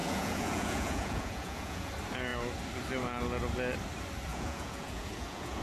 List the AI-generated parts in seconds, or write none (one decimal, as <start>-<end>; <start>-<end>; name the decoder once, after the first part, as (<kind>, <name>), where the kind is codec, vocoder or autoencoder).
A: 0.0-1.9 (vocoder, Vocos); 4.3-5.6